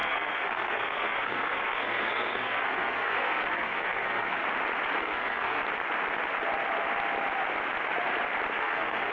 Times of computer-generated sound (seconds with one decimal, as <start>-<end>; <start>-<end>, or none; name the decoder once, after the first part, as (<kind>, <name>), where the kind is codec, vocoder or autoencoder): 0.0-4.4 (codec, SNAC); 5.0-5.6; 8.6-9.1